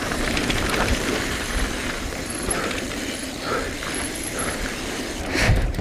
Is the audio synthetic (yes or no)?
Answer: yes